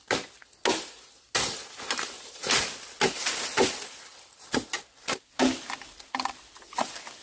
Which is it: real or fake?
real